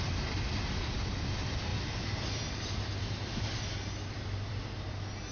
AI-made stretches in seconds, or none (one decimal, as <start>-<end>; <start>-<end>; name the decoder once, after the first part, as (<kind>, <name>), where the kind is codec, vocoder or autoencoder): none